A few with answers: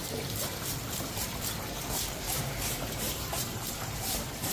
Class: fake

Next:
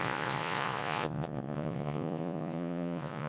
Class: fake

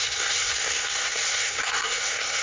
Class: fake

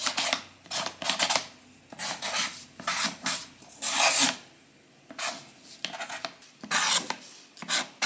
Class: real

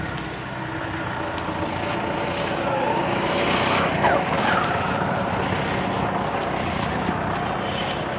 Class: real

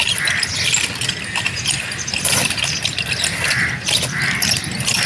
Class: real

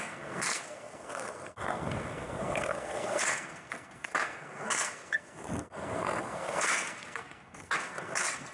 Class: fake